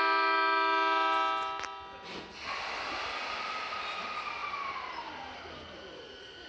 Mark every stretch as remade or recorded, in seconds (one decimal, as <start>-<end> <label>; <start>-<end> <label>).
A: 0.0-6.5 recorded